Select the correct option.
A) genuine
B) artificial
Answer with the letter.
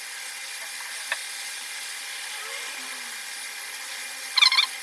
A